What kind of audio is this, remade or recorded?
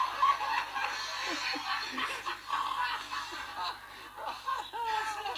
recorded